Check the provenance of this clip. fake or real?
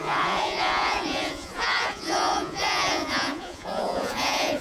fake